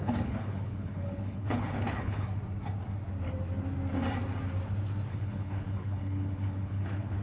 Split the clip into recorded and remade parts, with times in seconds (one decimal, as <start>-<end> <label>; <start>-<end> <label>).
0.0-2.3 remade; 2.3-5.1 recorded; 5.1-7.2 remade